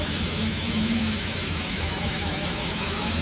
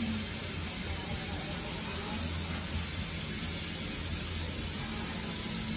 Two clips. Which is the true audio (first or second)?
second